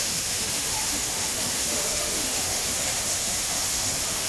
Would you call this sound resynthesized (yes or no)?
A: yes